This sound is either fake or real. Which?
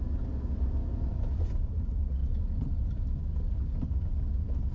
real